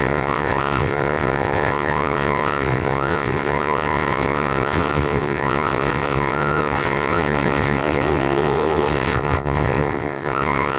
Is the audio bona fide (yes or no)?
no